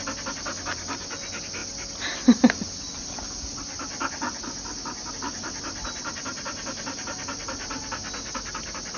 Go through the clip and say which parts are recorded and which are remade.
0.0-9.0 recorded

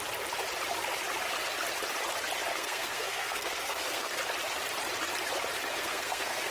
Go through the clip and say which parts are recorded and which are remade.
0.0-2.5 recorded; 2.5-4.2 remade; 4.2-5.7 recorded; 5.7-6.5 remade

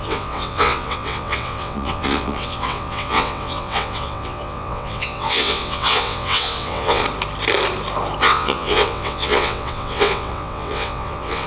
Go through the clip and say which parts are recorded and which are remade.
0.0-7.0 remade; 7.0-8.2 recorded; 8.2-11.5 remade

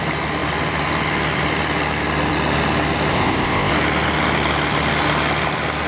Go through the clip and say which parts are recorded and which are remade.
0.0-3.1 recorded; 3.1-3.7 remade; 3.7-5.9 recorded

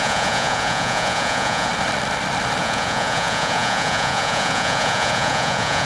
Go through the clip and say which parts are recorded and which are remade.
0.0-1.7 remade; 1.7-2.6 recorded; 2.6-5.9 remade

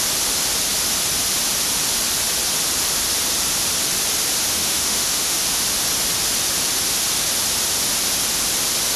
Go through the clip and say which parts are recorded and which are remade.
0.0-4.6 recorded; 4.6-5.4 remade; 5.4-9.0 recorded